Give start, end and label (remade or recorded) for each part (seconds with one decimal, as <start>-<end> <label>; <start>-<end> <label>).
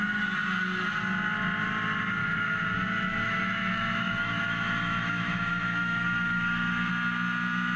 0.0-2.2 recorded; 2.2-6.9 remade; 6.9-7.8 recorded